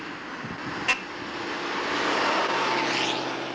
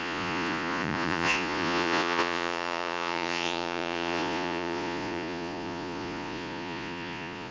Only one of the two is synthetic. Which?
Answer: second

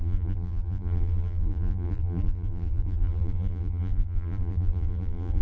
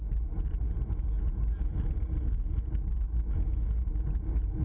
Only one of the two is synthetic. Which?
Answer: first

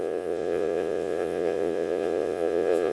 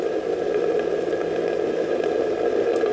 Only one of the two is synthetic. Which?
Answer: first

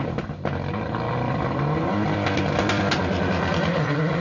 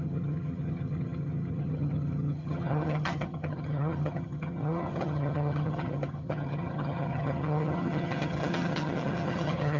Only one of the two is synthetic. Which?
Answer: second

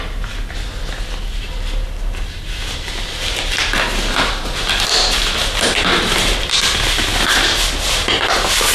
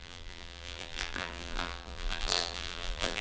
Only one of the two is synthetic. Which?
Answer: second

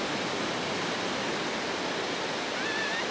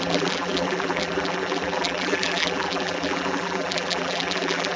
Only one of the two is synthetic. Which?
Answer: second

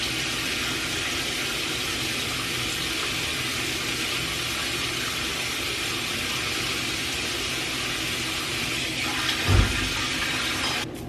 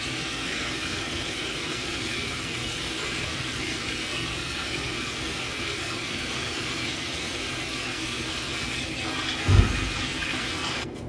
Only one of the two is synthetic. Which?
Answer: second